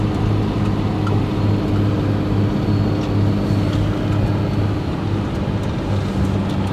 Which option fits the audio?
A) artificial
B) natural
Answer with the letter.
B